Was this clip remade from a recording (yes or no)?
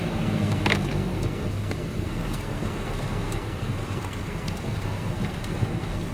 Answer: yes